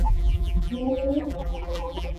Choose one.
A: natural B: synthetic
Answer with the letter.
B